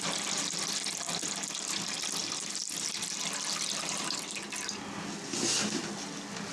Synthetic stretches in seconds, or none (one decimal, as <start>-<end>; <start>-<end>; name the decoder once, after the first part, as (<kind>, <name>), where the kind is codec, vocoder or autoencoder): none